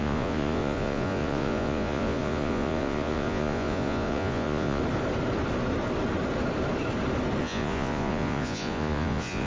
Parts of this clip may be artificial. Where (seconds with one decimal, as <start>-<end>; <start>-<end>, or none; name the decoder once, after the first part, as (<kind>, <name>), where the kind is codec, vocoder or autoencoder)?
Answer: 0.0-4.8 (vocoder, Vocos); 7.4-9.5